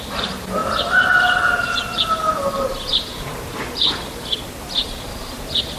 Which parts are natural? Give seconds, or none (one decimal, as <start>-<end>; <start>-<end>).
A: 0.0-5.8